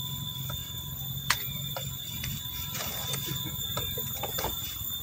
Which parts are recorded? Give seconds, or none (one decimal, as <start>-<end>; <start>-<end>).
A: none